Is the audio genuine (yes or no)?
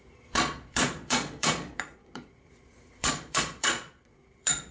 no